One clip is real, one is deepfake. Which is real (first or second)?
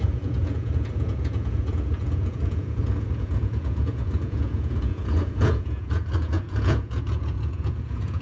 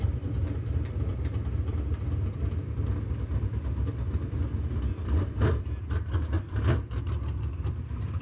second